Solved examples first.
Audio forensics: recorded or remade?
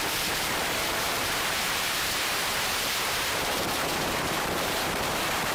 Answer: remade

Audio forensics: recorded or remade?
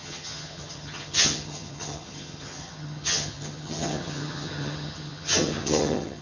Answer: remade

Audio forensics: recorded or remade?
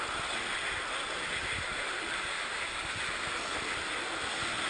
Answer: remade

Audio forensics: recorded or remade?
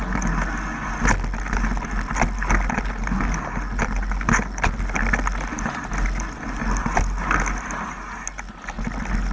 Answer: recorded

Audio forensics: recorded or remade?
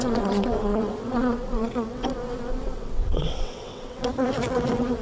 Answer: remade